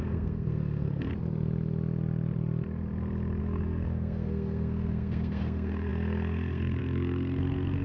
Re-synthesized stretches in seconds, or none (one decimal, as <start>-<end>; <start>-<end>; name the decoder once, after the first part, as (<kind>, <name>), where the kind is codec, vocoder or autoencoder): 0.0-1.1 (codec, SNAC); 3.4-7.8